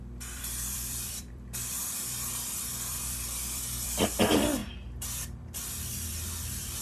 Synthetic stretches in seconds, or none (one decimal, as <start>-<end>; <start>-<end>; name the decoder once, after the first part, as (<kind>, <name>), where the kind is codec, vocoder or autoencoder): 0.0-4.6 (vocoder, BigVGAN v2); 5.8-6.8